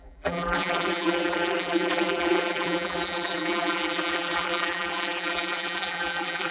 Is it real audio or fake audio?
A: fake